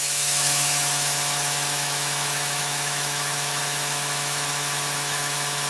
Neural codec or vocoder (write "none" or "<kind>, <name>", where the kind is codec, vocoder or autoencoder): autoencoder, DAC-VAE